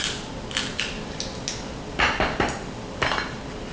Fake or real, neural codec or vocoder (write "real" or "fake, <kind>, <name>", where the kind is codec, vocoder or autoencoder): real